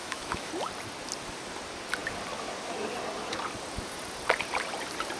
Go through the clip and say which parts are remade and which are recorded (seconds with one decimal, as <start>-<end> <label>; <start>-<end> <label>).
0.0-0.5 remade; 0.5-5.2 recorded